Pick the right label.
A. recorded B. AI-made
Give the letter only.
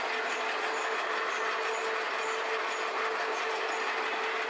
A